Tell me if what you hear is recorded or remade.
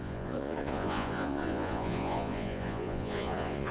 remade